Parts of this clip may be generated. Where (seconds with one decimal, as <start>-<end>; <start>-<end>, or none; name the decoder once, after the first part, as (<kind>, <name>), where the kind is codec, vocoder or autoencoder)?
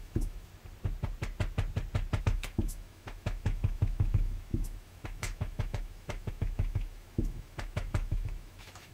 0.0-0.5 (autoencoder, DAC-VAE); 2.2-8.9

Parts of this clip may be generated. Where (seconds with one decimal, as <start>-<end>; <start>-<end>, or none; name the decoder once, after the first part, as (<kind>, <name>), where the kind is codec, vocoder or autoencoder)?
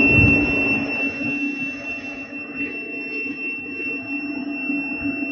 1.0-4.2 (autoencoder, DAC-VAE)